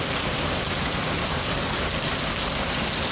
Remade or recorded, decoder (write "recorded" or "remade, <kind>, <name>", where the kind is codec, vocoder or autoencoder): recorded